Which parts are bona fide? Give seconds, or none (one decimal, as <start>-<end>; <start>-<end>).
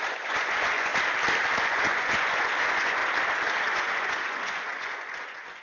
0.9-1.6; 3.0-3.7